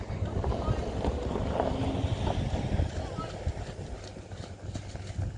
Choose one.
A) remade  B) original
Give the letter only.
B